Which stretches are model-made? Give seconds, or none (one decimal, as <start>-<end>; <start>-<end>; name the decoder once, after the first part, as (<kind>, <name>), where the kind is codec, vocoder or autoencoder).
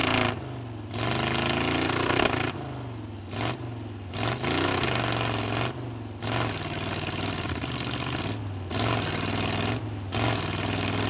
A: none